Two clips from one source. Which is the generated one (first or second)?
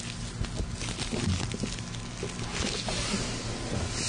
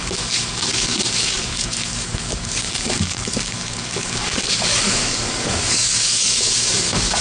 second